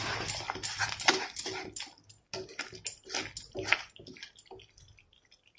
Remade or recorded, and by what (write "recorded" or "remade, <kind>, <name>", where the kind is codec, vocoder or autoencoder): recorded